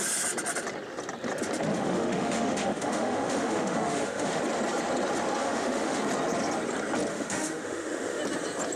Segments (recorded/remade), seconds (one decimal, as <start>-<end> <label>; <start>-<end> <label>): 0.0-1.7 recorded; 1.7-4.4 remade; 4.4-5.4 recorded; 5.4-6.0 remade; 6.0-7.1 recorded; 7.1-8.2 remade; 8.2-8.8 recorded